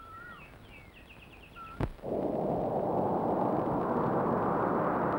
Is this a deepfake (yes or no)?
no